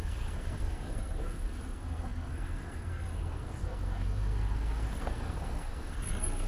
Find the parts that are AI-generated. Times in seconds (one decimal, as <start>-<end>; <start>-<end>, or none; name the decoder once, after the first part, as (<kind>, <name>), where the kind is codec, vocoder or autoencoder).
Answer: 0.0-6.5 (codec, SNAC)